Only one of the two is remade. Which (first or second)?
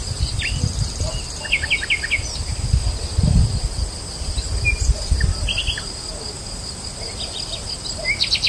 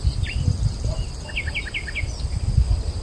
second